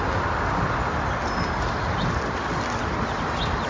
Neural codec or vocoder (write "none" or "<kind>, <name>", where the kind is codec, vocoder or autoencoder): none